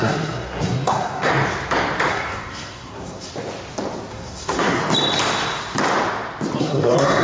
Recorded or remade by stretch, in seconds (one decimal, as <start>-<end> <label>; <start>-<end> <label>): 0.0-1.3 remade; 1.3-2.1 recorded; 2.1-3.3 remade; 3.3-4.1 recorded; 4.1-4.8 remade; 4.8-6.6 recorded; 6.6-7.2 remade